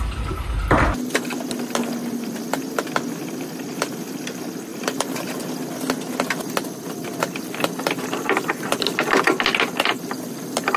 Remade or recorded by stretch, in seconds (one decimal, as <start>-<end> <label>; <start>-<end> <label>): 0.0-4.7 recorded; 4.7-5.5 remade; 5.5-10.8 recorded